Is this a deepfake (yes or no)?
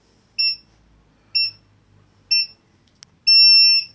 no